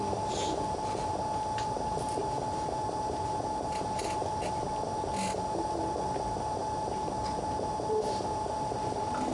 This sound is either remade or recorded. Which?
recorded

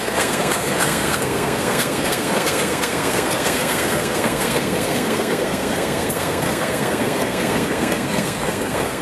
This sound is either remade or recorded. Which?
remade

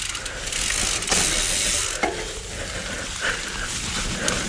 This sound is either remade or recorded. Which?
recorded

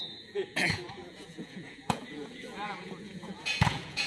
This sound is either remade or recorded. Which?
remade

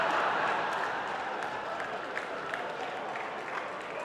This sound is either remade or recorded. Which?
recorded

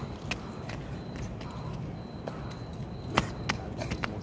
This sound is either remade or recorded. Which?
recorded